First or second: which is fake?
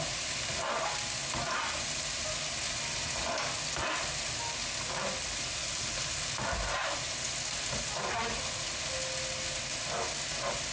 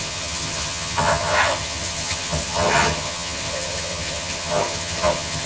second